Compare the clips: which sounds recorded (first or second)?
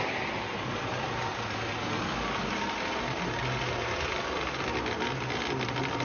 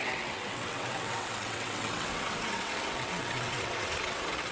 first